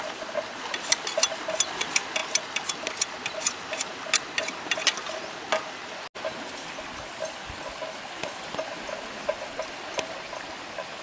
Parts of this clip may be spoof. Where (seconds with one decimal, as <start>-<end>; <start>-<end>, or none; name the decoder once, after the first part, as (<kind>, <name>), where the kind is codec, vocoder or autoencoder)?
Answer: none